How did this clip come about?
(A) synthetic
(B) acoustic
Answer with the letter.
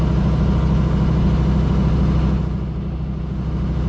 B